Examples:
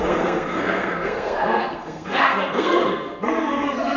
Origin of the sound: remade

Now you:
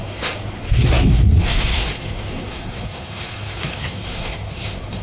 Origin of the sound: remade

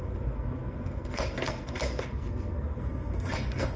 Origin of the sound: remade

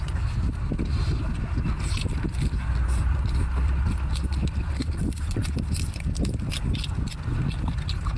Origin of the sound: recorded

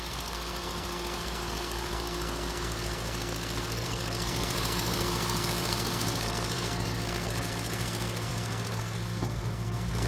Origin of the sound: remade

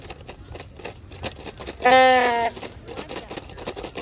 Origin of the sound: recorded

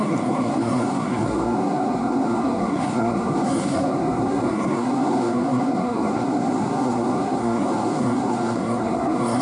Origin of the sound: remade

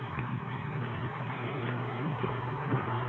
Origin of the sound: remade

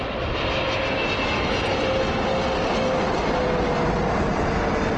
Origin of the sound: recorded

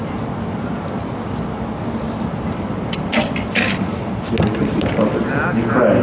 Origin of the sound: recorded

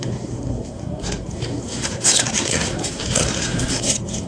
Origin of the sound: remade